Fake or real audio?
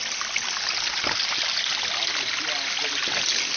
real